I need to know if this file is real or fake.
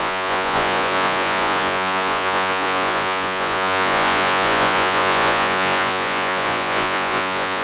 fake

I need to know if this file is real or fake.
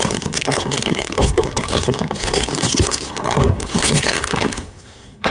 fake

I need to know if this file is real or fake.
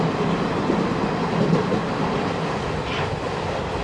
real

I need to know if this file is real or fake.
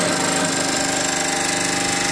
real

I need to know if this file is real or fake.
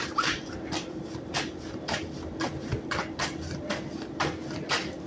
real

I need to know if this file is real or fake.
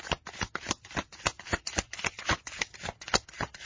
real